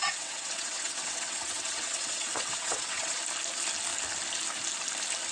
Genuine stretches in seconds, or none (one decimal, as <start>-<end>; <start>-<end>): 3.2-5.3